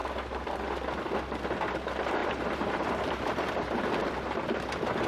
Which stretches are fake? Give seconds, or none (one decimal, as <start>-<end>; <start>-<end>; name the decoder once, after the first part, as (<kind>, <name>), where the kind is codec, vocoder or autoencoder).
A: 2.2-4.1 (vocoder, BigVGAN v2)

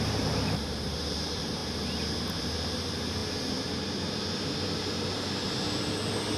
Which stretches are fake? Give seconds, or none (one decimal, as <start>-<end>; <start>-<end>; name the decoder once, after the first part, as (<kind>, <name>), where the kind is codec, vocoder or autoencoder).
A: 0.0-1.6 (vocoder, BigVGAN v2); 2.4-3.2

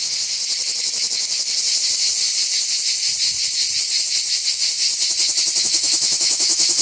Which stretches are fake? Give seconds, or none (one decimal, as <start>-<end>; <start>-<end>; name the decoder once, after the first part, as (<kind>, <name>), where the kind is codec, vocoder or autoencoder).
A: 0.0-0.4 (autoencoder, DAC-VAE); 4.5-4.9; 5.6-6.8

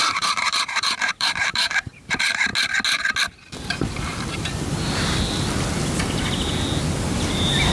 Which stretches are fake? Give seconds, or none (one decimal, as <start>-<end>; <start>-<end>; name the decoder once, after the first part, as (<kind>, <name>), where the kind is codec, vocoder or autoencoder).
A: 0.0-2.5 (vocoder, BigVGAN v2); 7.1-7.7

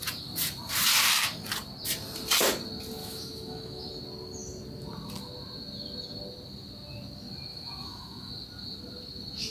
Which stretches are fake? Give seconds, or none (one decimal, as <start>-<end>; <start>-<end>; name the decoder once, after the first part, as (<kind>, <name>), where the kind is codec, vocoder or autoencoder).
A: 3.0-3.9 (autoencoder, DAC-VAE); 7.5-8.3

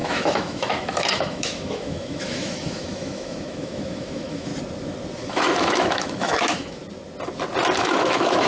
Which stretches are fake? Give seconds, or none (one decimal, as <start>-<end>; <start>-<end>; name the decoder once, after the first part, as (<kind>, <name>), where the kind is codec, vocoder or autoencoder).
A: 0.0-4.5 (autoencoder, DAC-VAE); 5.3-6.8; 7.8-8.5